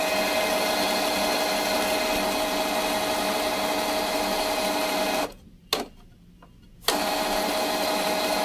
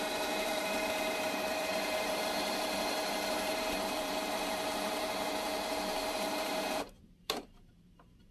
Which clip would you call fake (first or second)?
second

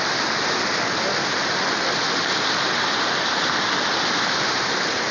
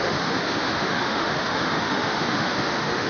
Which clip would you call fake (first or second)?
second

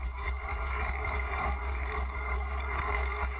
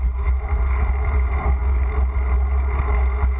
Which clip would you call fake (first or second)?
first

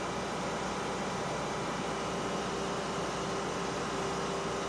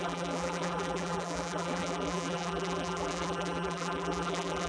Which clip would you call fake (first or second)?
second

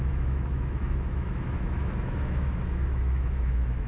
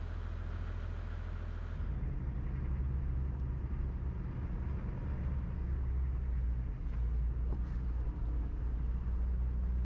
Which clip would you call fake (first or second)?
first